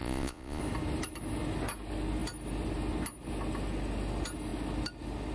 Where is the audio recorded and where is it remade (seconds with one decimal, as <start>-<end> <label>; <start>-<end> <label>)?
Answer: 0.0-0.6 remade; 0.6-5.3 recorded